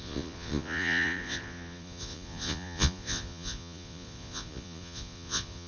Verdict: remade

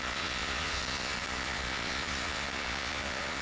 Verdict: remade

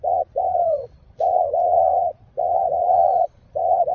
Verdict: remade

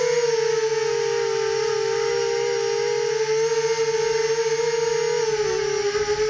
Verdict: recorded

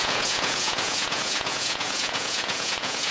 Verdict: remade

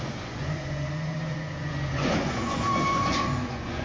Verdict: remade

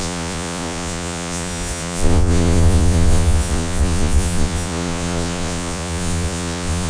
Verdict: remade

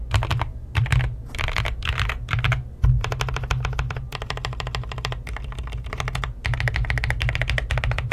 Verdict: recorded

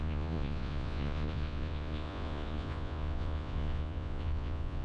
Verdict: remade